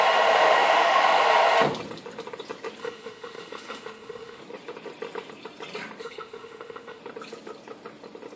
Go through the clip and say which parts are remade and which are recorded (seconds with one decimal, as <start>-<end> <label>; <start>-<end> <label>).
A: 0.0-0.4 recorded; 0.4-1.2 remade; 1.2-2.8 recorded; 2.8-4.4 remade; 4.4-6.0 recorded; 6.0-7.0 remade; 7.0-8.4 recorded